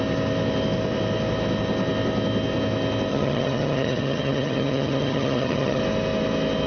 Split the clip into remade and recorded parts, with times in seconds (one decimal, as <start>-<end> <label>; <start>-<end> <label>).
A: 0.0-3.1 recorded; 3.1-5.8 remade; 5.8-6.7 recorded